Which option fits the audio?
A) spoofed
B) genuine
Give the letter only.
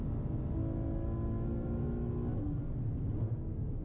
B